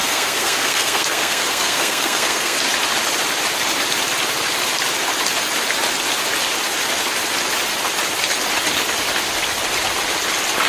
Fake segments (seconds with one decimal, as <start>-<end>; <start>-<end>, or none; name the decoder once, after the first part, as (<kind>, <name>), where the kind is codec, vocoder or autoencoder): 0.0-2.6 (codec, SNAC)